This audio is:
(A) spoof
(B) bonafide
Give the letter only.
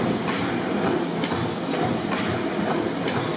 B